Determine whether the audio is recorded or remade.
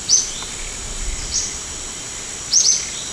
recorded